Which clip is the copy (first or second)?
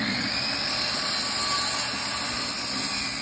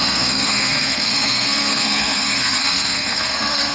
second